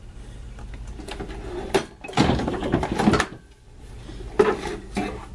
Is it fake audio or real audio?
real